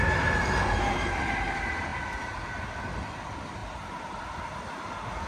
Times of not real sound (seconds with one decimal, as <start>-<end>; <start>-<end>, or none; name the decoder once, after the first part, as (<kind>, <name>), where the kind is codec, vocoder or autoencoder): none